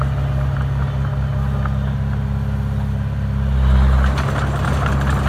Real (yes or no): yes